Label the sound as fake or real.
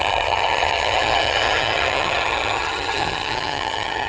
fake